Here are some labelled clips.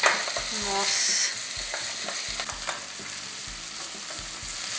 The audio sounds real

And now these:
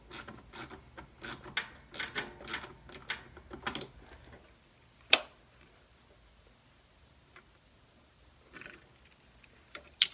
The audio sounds real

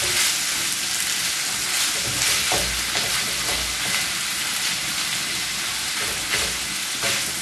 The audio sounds real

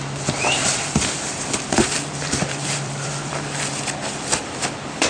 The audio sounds fake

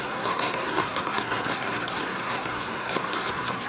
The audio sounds fake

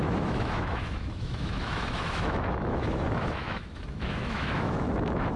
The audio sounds fake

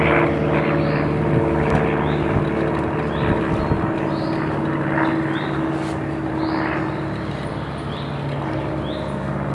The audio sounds real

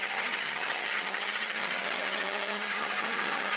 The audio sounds fake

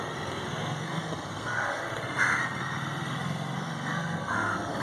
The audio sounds fake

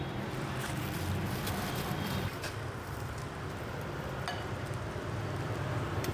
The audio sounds fake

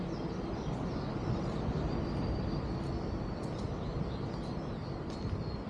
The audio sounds real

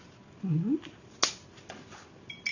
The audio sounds real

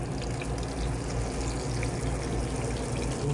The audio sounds real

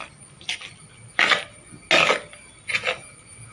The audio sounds real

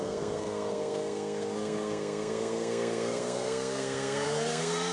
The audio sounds fake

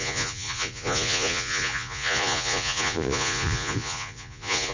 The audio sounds fake